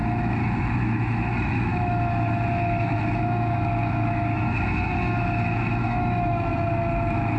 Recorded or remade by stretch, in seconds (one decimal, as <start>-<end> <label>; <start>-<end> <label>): 0.0-7.4 remade